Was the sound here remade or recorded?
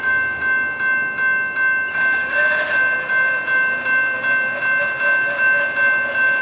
recorded